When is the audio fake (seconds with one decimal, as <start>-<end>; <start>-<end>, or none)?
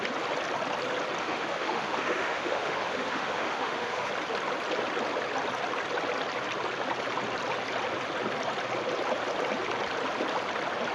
1.2-4.1